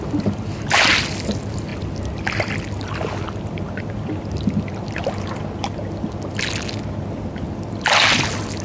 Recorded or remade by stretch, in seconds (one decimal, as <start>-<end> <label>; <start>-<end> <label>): 0.0-8.6 recorded